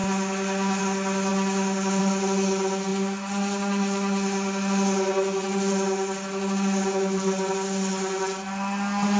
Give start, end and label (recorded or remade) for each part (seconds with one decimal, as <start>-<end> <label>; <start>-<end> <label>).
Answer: 0.0-9.2 recorded